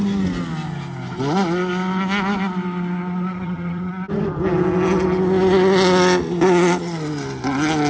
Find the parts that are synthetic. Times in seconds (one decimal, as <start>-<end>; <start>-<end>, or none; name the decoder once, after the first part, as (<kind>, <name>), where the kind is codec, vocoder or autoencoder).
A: 3.3-3.9 (vocoder, HiFi-GAN)